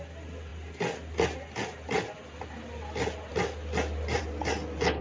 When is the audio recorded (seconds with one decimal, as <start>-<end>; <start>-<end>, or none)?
0.0-5.0